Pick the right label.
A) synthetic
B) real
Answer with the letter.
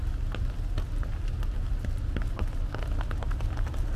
B